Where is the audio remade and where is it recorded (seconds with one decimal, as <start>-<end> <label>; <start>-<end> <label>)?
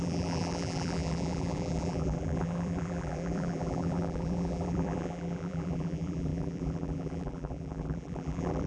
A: 0.0-8.7 remade